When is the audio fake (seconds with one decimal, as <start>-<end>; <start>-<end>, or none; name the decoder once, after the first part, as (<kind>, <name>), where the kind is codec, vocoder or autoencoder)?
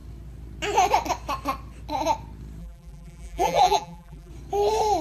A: 2.6-4.3 (vocoder, BigVGAN v2)